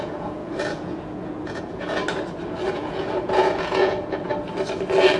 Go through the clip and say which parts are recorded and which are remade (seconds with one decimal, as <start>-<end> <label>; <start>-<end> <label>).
0.0-2.0 remade; 2.0-2.7 recorded; 2.7-4.3 remade; 4.3-5.2 recorded